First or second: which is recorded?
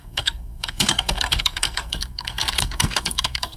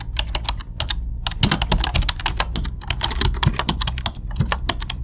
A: second